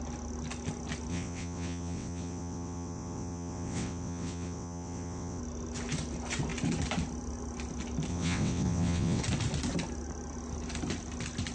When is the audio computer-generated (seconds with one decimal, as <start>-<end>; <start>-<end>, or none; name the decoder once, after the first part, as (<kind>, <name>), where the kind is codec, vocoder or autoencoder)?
1.1-5.4 (vocoder, WaveNeXt); 8.1-9.2